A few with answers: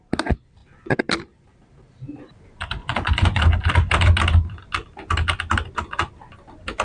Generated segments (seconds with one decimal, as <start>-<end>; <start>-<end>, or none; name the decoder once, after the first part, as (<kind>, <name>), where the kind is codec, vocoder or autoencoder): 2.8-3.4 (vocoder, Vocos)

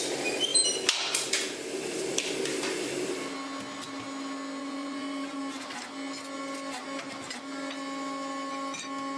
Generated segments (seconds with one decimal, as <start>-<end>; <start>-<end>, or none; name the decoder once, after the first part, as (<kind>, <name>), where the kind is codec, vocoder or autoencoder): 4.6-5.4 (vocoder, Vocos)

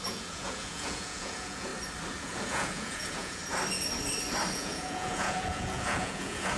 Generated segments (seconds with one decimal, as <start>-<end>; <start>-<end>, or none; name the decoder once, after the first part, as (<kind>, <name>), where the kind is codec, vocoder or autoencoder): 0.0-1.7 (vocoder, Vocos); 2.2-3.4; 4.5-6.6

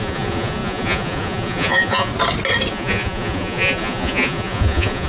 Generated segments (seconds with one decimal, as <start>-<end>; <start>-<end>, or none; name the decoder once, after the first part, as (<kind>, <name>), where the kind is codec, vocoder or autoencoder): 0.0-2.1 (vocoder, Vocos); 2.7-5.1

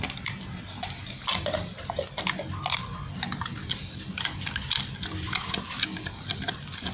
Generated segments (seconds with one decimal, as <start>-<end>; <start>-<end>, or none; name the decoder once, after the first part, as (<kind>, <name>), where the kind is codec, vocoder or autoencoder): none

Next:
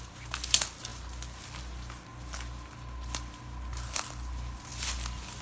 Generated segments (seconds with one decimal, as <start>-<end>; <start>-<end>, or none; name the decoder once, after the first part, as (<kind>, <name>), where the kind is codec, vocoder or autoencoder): none